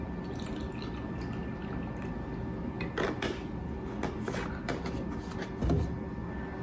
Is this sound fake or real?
real